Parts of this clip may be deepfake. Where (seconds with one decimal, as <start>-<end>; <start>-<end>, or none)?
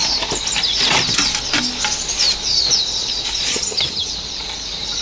3.5-4.1